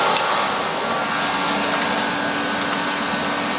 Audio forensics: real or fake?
real